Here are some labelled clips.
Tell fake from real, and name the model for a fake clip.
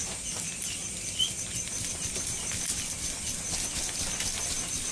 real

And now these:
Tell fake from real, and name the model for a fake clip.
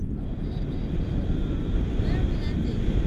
real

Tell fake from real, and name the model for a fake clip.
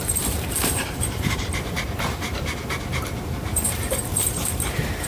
fake, vocoder, BigVGAN v2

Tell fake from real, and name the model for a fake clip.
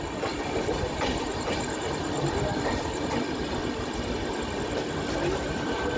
fake, vocoder, BigVGAN v2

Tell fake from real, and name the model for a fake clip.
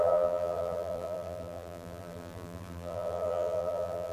fake, vocoder, BigVGAN v2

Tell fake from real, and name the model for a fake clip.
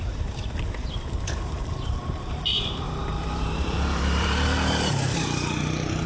fake, vocoder, BigVGAN v2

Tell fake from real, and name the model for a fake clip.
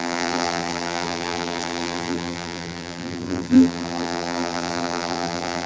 fake, vocoder, BigVGAN v2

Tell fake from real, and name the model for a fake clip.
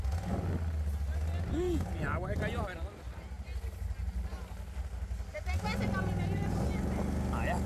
real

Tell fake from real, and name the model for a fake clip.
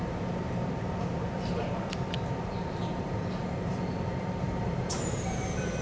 fake, vocoder, BigVGAN v2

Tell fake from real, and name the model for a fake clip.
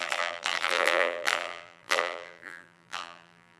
fake, vocoder, BigVGAN v2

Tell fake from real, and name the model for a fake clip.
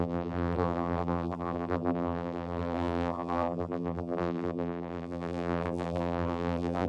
fake, vocoder, BigVGAN v2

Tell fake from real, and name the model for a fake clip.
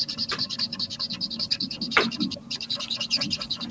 fake, vocoder, BigVGAN v2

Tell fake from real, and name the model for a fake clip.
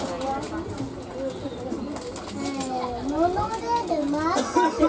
real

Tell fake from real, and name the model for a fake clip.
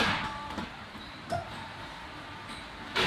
fake, vocoder, BigVGAN v2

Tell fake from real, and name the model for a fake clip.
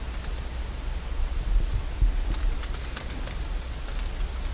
real